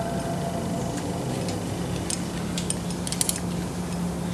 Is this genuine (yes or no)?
yes